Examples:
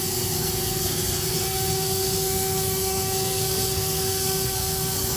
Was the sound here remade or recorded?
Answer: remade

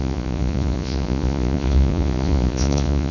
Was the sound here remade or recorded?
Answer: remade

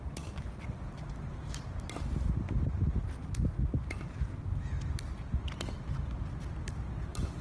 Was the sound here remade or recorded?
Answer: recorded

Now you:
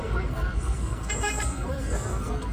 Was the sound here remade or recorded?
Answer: remade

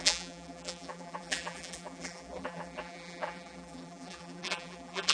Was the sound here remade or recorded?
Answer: remade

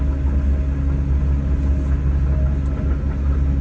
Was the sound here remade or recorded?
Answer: recorded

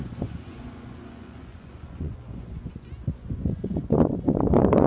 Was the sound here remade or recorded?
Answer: remade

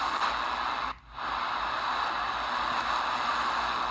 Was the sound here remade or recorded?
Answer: recorded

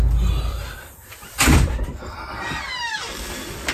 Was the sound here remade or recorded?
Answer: remade